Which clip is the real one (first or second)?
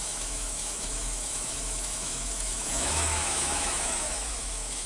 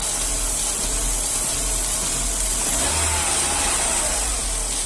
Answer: second